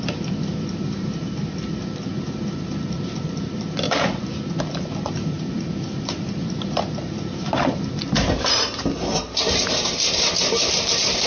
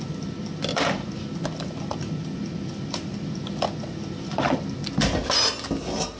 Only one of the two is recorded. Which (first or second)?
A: second